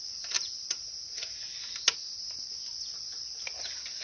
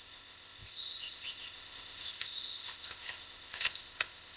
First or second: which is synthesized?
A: second